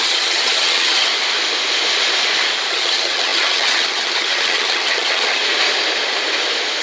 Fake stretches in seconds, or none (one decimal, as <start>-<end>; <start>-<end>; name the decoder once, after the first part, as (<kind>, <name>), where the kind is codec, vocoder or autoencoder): 0.0-1.1 (vocoder, HiFi-GAN); 2.7-5.4